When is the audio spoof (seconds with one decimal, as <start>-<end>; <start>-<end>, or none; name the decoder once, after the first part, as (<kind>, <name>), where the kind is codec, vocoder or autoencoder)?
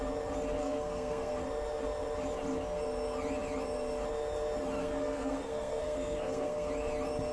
0.6-1.3 (codec, SNAC); 4.8-6.7